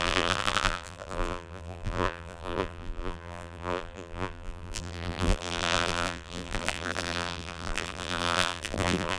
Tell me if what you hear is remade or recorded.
remade